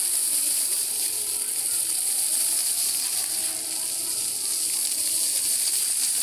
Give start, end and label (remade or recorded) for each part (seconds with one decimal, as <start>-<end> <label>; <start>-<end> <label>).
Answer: 0.0-2.6 remade; 2.6-5.6 recorded; 5.6-6.2 remade